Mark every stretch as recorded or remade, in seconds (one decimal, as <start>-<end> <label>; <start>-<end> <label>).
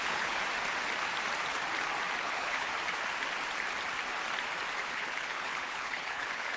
0.0-0.4 remade; 0.4-2.2 recorded; 2.2-2.7 remade; 2.7-4.9 recorded; 4.9-6.6 remade